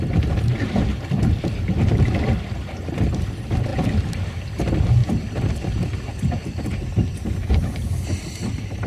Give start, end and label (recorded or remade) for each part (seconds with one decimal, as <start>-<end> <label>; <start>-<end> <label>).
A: 0.0-3.7 recorded; 3.7-4.5 remade; 4.5-5.0 recorded; 5.0-6.9 remade; 6.9-8.9 recorded